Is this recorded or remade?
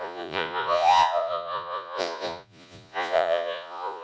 remade